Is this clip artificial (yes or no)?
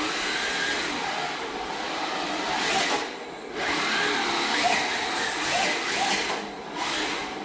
no